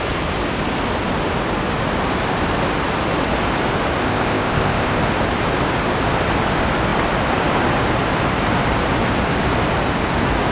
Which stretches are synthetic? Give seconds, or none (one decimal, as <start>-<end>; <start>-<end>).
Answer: 4.0-5.0